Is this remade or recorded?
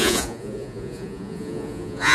remade